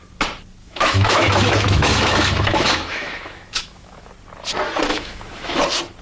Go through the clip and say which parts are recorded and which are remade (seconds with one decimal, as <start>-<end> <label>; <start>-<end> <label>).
0.0-0.6 recorded; 0.6-4.1 remade; 4.1-4.9 recorded; 4.9-5.6 remade; 5.6-6.0 recorded